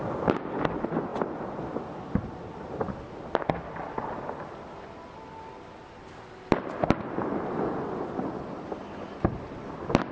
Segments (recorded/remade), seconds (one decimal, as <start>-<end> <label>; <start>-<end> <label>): 0.0-10.1 recorded